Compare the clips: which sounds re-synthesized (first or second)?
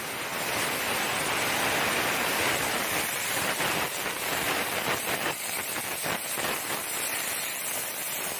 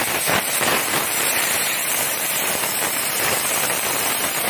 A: second